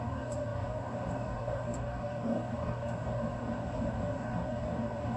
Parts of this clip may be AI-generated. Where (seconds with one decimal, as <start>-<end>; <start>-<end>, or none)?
0.0-5.2